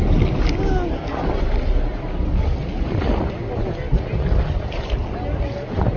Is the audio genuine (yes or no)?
yes